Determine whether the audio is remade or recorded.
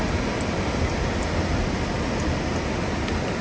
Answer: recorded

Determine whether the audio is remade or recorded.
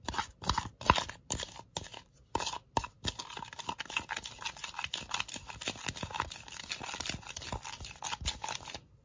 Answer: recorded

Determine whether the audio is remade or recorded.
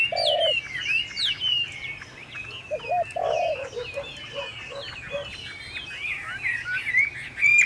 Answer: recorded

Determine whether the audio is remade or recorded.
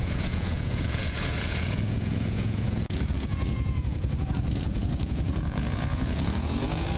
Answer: remade